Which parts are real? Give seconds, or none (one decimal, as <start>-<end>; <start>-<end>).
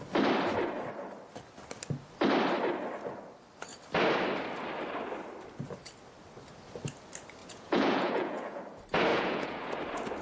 0.0-7.4; 8.6-9.1; 9.7-10.2